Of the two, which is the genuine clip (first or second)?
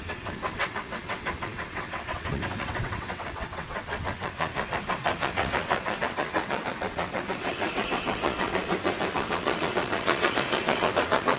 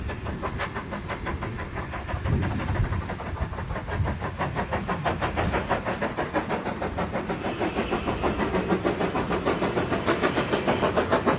second